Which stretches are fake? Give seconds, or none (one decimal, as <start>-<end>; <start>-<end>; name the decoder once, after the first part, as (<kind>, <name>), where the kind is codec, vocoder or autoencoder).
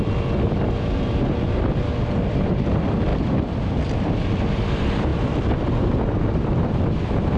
0.0-3.1 (vocoder, BigVGAN v2); 3.6-7.4